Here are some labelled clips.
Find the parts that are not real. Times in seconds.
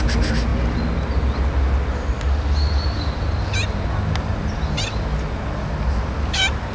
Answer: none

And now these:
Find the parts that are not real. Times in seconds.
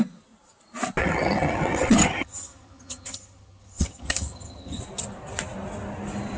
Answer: 1.0-4.8 (vocoder, HiFi-GAN)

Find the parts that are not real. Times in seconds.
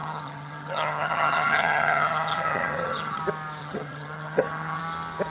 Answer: 0.0-3.2 (vocoder, HiFi-GAN); 3.6-4.8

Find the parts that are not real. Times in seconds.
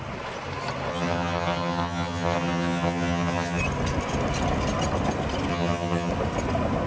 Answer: 0.9-3.6 (vocoder, HiFi-GAN); 5.5-6.1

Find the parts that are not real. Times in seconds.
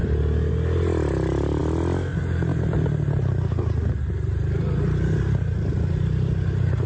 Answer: none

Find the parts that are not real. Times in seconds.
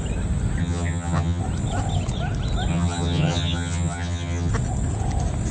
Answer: 0.6-1.4 (vocoder, HiFi-GAN); 2.7-4.5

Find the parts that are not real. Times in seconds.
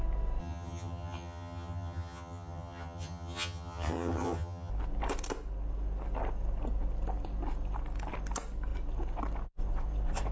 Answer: 0.4-4.7 (vocoder, HiFi-GAN)